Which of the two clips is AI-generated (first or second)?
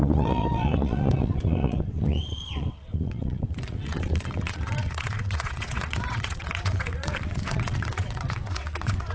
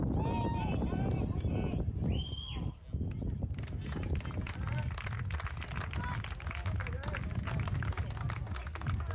first